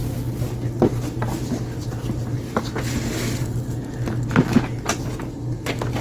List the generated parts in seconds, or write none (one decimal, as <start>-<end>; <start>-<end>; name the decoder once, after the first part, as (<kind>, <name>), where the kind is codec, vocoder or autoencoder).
none